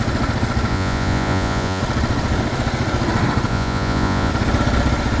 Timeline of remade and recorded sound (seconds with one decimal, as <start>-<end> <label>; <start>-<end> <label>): 0.0-0.7 recorded; 0.7-1.8 remade; 1.8-3.5 recorded; 3.5-4.3 remade; 4.3-5.2 recorded